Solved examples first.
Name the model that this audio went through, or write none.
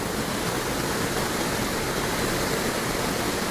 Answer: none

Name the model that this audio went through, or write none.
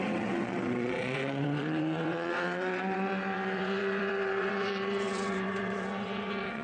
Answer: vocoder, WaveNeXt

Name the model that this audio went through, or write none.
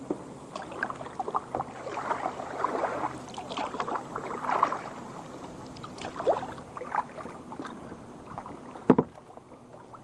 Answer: vocoder, BigVGAN v2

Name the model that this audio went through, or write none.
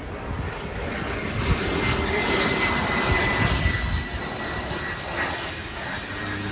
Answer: none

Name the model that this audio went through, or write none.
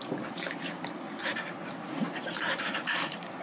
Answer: none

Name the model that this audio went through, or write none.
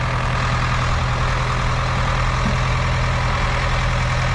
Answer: none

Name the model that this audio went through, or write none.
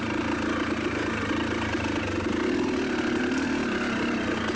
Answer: none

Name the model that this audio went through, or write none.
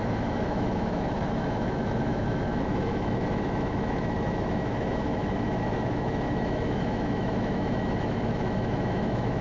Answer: autoencoder, DAC-VAE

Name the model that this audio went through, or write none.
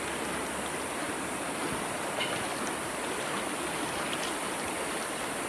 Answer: none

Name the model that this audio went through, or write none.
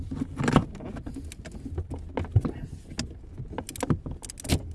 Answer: none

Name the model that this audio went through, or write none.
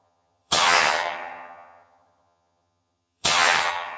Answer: vocoder, HiFi-GAN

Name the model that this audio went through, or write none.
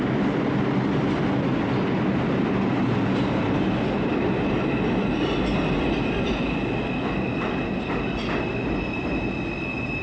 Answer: none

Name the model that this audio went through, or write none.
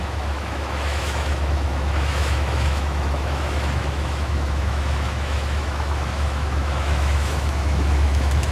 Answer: autoencoder, DAC-VAE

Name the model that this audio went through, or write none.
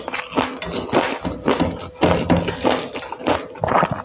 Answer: none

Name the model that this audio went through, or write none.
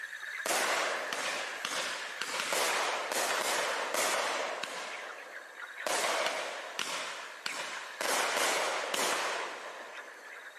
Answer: none